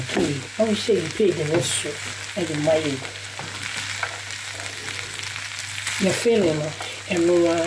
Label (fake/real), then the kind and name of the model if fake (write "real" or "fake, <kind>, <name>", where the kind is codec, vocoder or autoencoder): real